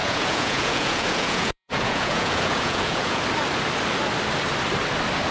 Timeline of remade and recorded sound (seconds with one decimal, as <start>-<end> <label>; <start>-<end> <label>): 0.0-3.2 remade; 3.2-5.3 recorded